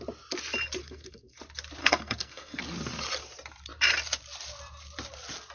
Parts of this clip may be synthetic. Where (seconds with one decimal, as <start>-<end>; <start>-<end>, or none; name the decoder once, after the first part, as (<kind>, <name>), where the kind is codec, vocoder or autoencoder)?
0.8-1.4 (codec, SNAC); 1.8-2.6